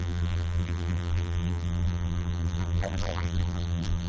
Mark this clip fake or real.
fake